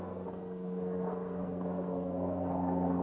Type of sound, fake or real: fake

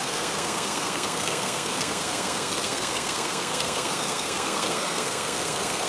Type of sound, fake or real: fake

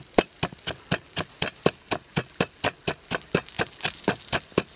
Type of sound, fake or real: real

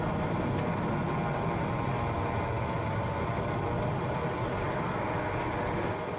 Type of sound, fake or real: real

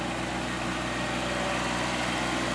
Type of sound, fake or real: real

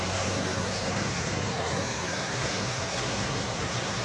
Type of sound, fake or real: fake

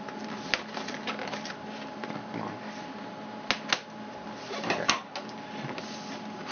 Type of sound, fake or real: real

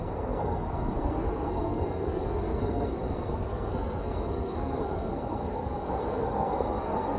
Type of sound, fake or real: fake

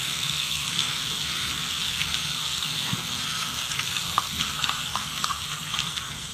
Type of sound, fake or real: fake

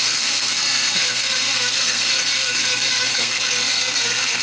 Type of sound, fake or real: fake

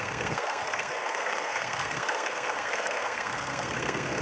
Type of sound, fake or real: fake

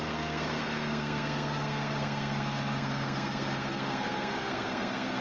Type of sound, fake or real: fake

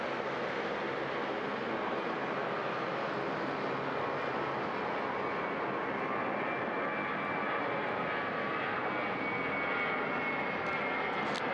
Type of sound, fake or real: real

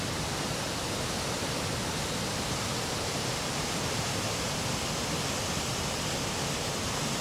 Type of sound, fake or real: real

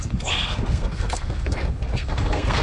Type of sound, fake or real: fake